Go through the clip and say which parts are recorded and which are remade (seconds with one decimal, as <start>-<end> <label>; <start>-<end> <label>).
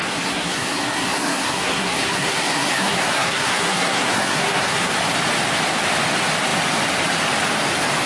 0.0-4.9 remade; 4.9-8.1 recorded